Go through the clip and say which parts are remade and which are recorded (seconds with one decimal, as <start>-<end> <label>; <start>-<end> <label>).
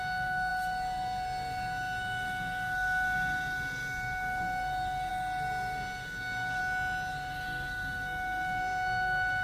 0.0-6.6 remade; 6.6-7.1 recorded; 7.1-9.4 remade